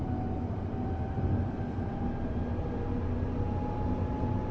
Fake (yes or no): no